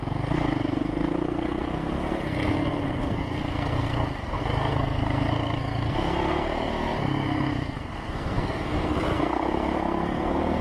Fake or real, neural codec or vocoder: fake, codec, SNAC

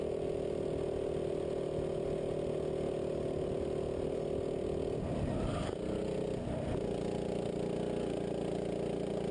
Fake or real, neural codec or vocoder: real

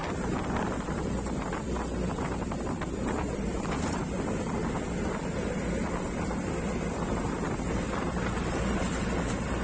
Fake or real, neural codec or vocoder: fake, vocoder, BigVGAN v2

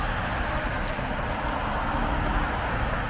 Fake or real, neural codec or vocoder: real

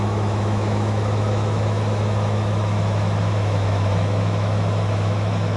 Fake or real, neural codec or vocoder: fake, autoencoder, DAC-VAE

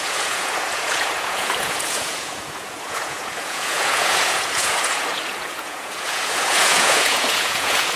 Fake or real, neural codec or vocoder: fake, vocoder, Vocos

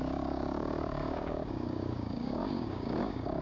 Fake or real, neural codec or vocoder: fake, codec, DAC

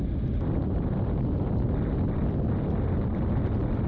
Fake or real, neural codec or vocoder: real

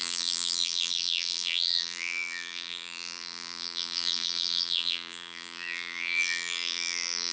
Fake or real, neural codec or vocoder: fake, vocoder, BigVGAN v2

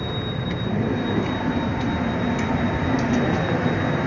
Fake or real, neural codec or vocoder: real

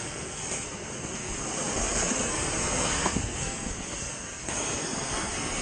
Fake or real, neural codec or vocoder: fake, codec, SNAC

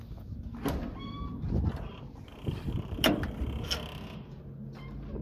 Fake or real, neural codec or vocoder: real